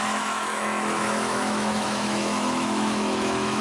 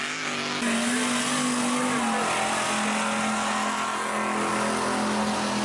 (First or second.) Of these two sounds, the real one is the second